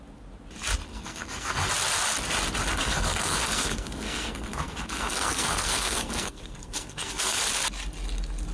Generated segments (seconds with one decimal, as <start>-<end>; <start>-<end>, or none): 0.9-1.7; 2.8-7.4